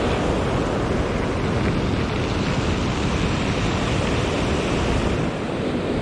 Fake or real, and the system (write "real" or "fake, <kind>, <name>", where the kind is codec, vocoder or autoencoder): real